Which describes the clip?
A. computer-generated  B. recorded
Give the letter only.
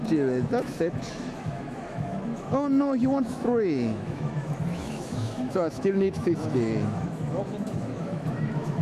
A